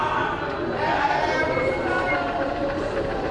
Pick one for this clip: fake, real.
fake